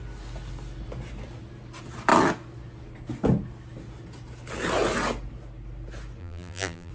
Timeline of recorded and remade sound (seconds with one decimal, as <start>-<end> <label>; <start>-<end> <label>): 0.0-6.2 recorded; 6.2-6.9 remade